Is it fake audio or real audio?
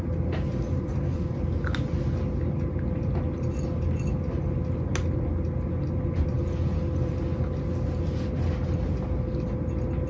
real